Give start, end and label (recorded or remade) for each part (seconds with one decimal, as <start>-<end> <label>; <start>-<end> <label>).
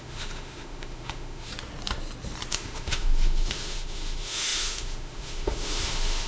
0.0-1.5 remade; 1.5-2.5 recorded; 2.5-6.3 remade